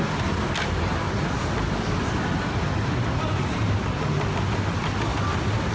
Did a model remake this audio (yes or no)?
no